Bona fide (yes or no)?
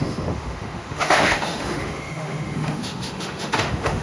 no